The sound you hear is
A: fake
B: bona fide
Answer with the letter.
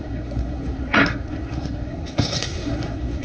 A